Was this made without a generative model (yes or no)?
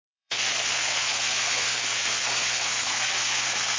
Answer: no